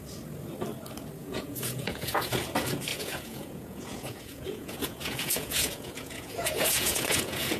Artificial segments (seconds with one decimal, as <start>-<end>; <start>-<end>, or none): 1.2-2.3; 2.9-7.6